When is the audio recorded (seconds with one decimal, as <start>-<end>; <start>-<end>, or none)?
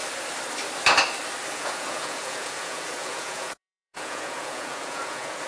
0.0-1.5